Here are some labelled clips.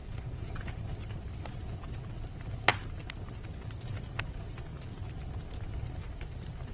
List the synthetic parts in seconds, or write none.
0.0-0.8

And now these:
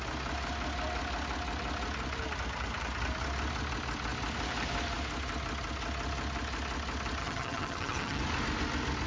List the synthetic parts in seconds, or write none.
7.2-8.2

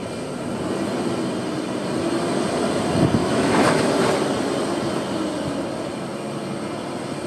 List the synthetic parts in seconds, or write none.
3.2-3.8

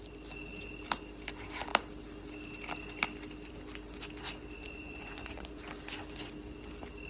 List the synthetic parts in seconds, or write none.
4.6-5.6

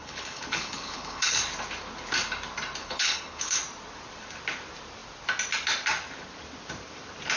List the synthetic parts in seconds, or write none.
0.0-1.4; 2.8-3.6

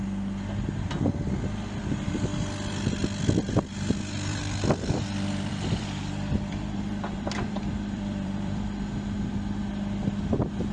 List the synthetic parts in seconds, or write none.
4.3-8.8